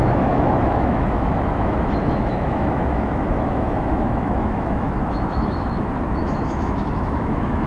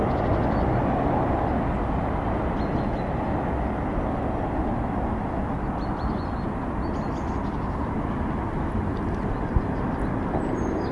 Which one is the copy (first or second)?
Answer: first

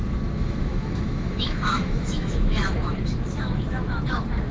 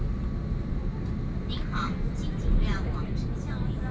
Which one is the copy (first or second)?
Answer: first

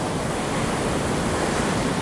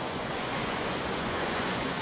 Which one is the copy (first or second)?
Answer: second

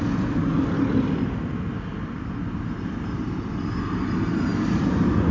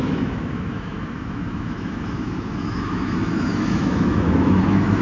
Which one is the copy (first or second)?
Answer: second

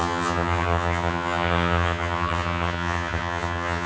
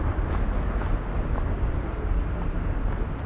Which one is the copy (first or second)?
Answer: first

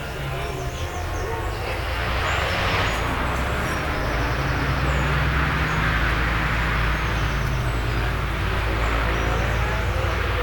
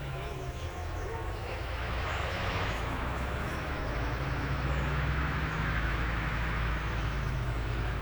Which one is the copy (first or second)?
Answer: second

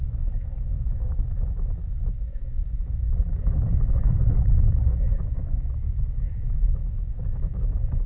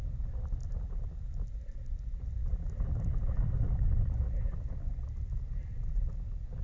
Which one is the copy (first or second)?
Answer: first